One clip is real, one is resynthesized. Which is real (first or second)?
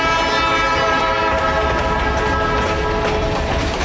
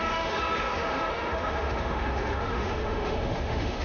first